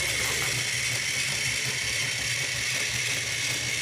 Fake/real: real